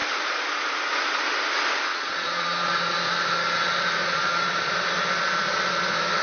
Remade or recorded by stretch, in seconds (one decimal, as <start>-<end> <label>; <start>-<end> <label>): 0.0-1.9 recorded; 1.9-2.7 remade; 2.7-4.0 recorded; 4.0-4.7 remade; 4.7-6.2 recorded